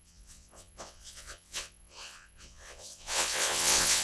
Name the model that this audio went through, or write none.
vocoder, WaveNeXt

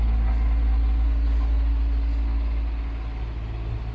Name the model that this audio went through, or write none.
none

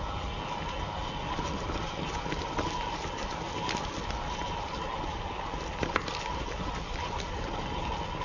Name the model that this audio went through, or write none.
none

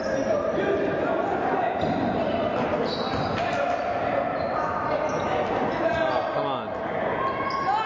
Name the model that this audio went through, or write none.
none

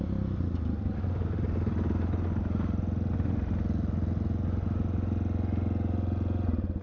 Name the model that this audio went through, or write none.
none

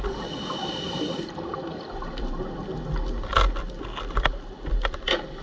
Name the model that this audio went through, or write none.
none